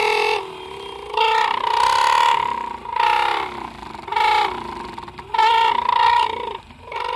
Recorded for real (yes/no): yes